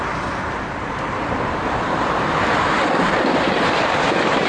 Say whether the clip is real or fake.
fake